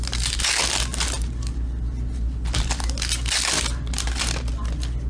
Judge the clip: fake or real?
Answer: real